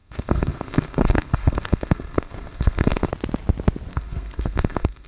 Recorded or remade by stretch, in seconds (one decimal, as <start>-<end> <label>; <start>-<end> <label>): 0.0-3.1 remade; 3.1-3.9 recorded; 3.9-5.1 remade